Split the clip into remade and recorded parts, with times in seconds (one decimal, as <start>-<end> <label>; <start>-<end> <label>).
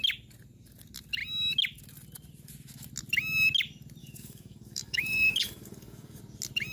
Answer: 0.0-4.0 recorded; 4.0-6.2 remade; 6.2-6.7 recorded